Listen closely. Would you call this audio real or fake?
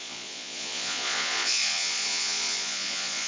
fake